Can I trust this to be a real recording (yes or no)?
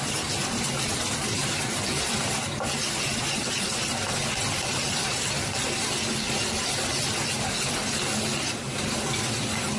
yes